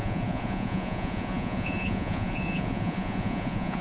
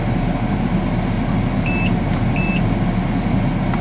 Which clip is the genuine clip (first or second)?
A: second